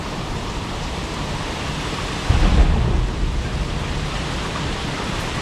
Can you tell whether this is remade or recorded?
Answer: remade